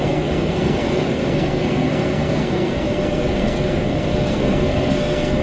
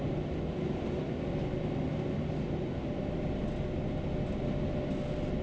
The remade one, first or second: first